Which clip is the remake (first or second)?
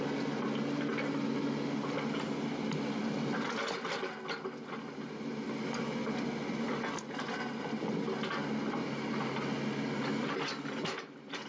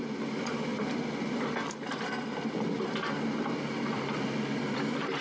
second